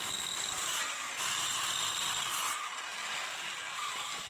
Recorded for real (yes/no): yes